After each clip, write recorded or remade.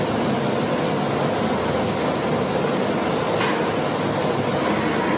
recorded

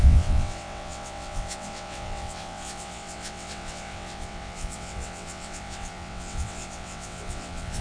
remade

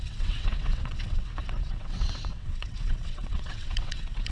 remade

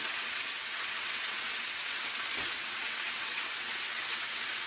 remade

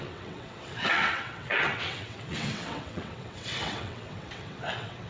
remade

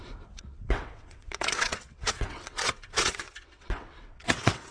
remade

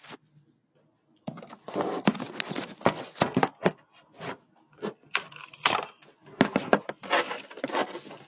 recorded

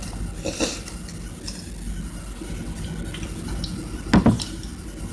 recorded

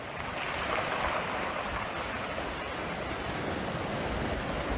recorded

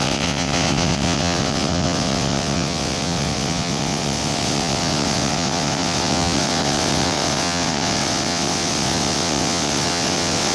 remade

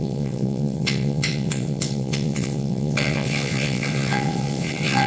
remade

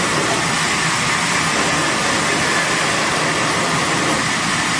recorded